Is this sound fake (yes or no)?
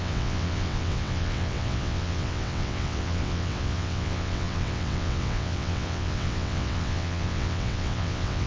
yes